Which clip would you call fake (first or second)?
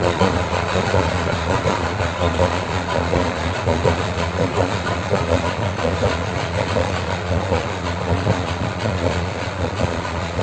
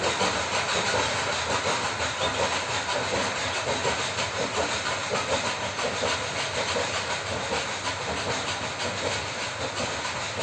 first